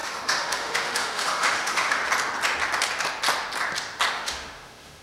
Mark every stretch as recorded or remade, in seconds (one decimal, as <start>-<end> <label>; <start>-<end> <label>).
0.0-2.0 remade; 2.0-4.1 recorded; 4.1-5.0 remade